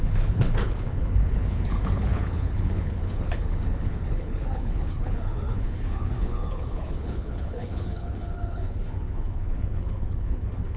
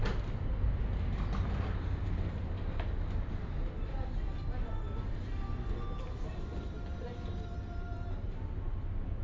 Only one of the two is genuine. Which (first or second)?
second